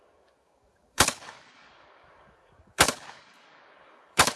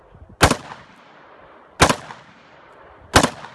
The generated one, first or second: first